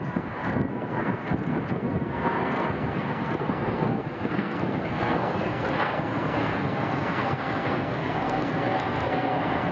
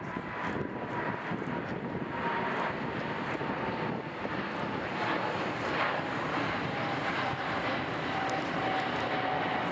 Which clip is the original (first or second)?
second